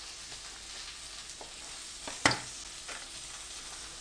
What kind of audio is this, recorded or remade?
recorded